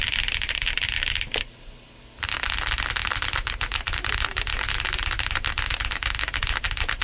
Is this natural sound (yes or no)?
yes